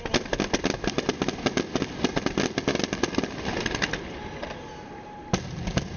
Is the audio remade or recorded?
recorded